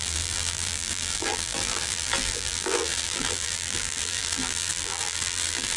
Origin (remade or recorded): remade